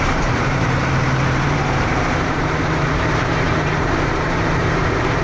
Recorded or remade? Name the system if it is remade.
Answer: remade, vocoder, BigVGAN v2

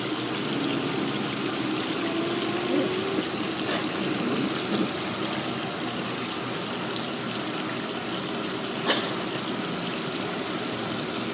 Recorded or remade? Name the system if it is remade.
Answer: recorded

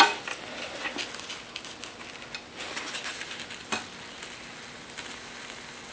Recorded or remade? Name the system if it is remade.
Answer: recorded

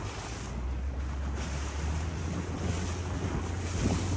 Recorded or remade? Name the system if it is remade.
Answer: recorded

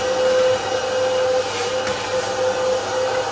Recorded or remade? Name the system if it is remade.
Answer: recorded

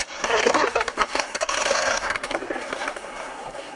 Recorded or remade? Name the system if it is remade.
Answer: remade, codec, SNAC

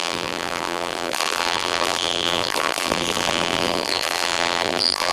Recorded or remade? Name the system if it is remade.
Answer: remade, vocoder, BigVGAN v2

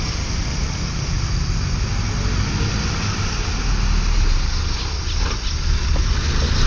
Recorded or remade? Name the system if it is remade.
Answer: recorded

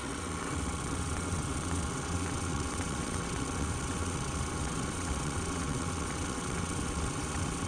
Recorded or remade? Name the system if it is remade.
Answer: remade, vocoder, WaveNeXt